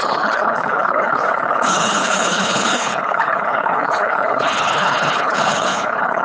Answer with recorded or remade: remade